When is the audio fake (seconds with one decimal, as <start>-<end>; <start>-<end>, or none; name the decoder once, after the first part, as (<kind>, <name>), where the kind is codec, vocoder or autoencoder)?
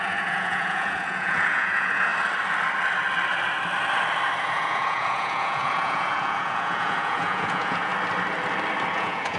0.0-2.1 (vocoder, Vocos); 4.4-7.9; 8.9-9.4